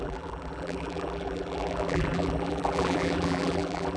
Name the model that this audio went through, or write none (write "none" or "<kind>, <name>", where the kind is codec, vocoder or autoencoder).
vocoder, BigVGAN v2